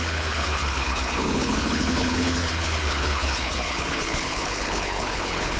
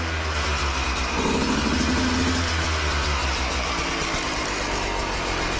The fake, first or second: first